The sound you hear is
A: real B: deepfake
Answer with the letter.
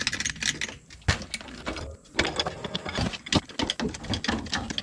A